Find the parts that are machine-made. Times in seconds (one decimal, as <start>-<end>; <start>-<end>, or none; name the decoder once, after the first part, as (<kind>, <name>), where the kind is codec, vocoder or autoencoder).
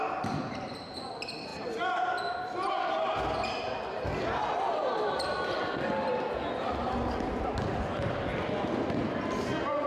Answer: 1.5-2.2 (vocoder, BigVGAN v2)